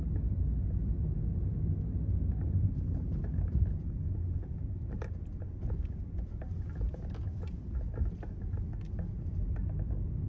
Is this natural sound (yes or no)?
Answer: yes